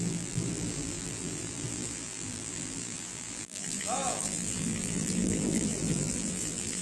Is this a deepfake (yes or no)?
yes